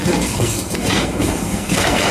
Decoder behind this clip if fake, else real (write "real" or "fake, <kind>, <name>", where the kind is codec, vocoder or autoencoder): fake, codec, SNAC